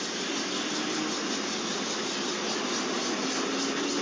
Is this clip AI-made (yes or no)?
no